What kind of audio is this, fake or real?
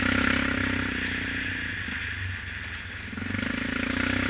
real